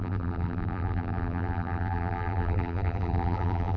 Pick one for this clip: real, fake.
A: fake